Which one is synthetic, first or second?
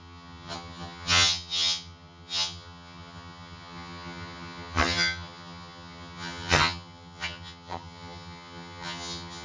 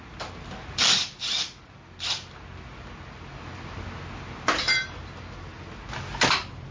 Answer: first